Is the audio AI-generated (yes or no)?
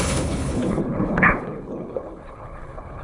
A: yes